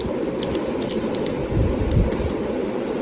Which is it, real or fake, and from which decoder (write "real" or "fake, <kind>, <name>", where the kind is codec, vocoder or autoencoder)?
real